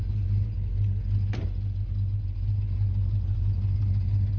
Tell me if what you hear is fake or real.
real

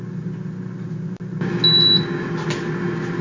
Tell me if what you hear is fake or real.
real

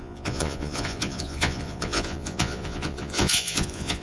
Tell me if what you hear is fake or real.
fake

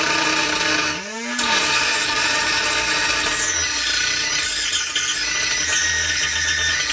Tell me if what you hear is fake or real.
real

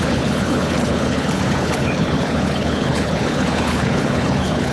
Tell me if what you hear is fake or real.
fake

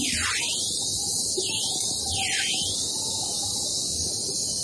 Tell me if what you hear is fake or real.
real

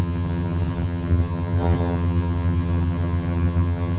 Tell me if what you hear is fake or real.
fake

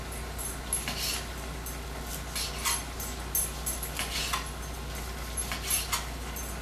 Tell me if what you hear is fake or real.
real